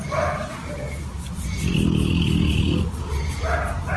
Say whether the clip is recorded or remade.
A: recorded